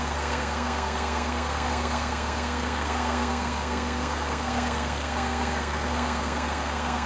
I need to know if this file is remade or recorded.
remade